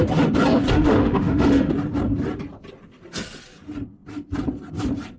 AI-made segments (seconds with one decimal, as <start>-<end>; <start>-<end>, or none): 0.7-1.7